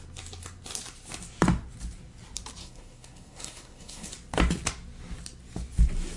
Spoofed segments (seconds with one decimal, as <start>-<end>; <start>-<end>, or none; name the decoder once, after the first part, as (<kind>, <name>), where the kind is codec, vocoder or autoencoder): 2.6-4.1 (codec, SNAC)